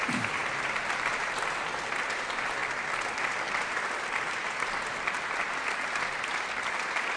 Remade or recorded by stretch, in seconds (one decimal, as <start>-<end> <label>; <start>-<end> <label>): 0.0-7.2 recorded